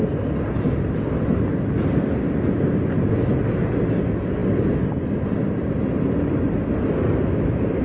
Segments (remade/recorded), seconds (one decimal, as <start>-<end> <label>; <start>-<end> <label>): 0.0-7.8 recorded